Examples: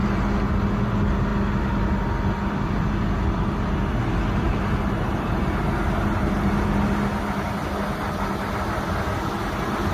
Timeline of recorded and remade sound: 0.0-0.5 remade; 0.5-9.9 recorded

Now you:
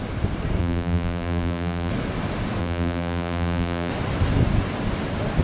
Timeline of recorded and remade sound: 0.0-0.6 recorded; 0.6-1.9 remade; 1.9-2.6 recorded; 2.6-3.9 remade; 3.9-5.4 recorded

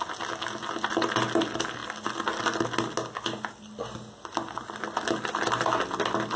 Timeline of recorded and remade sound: 0.0-6.4 recorded

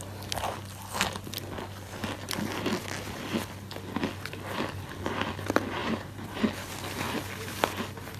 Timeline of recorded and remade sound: 0.0-5.8 recorded; 5.8-6.4 remade; 6.4-8.2 recorded

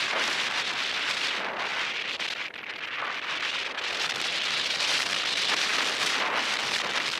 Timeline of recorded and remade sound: 0.0-1.7 remade; 1.7-3.4 recorded; 3.4-7.2 remade

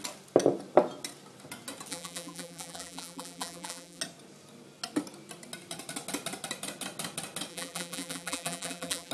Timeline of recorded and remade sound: 0.0-1.9 recorded; 1.9-4.0 remade; 4.0-7.5 recorded; 7.5-9.1 remade

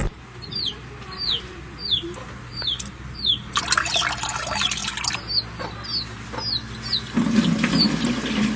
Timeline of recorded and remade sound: 0.0-2.5 recorded; 2.5-3.6 remade; 3.6-8.6 recorded

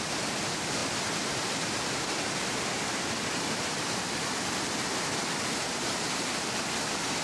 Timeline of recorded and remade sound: 0.0-7.2 remade